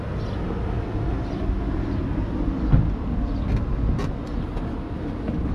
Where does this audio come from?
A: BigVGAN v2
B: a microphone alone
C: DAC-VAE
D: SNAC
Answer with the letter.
B